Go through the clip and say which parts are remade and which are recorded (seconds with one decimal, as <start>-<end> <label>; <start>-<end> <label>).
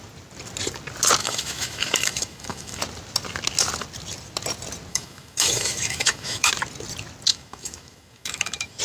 0.0-1.2 recorded; 1.2-2.8 remade; 2.8-4.9 recorded; 4.9-6.5 remade; 6.5-7.3 recorded; 7.3-8.8 remade